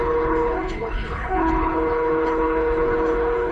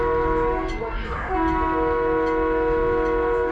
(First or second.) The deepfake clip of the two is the first